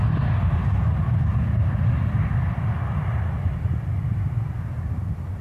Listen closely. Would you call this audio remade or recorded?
recorded